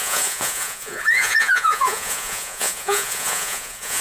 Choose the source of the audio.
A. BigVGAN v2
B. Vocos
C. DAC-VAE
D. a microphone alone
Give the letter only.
B